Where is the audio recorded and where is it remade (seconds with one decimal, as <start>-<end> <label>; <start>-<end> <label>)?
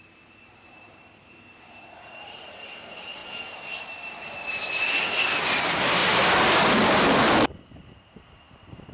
0.0-3.2 remade; 3.2-5.6 recorded; 5.6-6.0 remade; 6.0-7.8 recorded; 7.8-8.9 remade